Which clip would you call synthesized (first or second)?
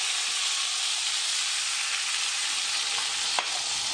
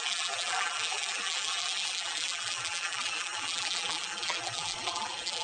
second